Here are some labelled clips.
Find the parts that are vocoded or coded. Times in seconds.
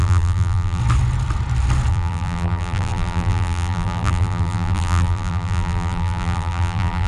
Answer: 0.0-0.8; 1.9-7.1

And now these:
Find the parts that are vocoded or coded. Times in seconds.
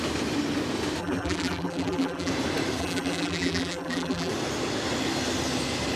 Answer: 1.0-2.3; 2.8-4.3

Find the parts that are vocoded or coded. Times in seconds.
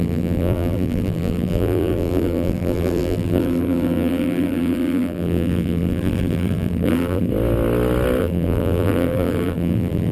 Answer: 0.0-7.3; 8.2-10.1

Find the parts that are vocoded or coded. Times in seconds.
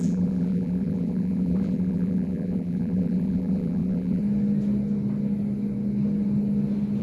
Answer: 0.0-4.2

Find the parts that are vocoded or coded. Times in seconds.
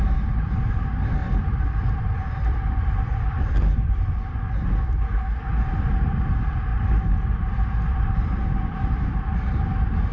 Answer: 1.2-4.8; 6.7-9.6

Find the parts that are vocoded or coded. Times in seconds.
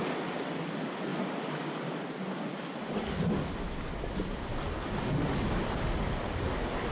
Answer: 0.0-1.1; 2.5-4.8; 5.5-6.9